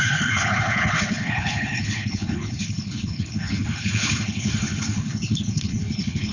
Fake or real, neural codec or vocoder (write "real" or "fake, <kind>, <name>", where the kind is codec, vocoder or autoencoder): fake, codec, HILCodec